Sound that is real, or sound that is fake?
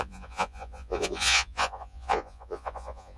fake